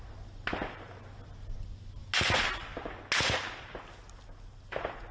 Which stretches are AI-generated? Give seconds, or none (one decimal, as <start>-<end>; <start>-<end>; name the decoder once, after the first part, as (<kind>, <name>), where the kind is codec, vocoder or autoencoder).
none